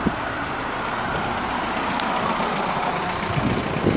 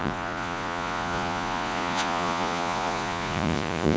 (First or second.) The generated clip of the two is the second